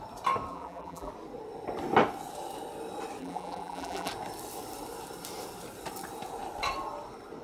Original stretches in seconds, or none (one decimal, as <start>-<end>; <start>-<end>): 0.0-0.5; 1.1-3.2; 4.1-7.4